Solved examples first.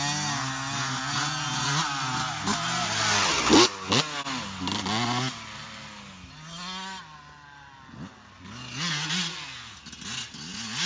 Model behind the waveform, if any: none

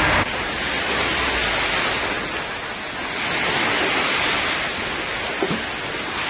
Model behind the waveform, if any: none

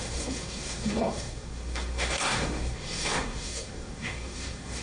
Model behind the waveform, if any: codec, SNAC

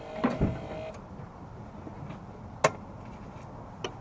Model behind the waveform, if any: none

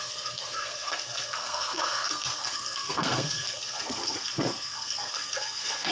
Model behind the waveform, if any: codec, SNAC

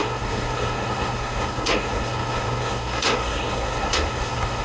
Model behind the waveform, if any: codec, SNAC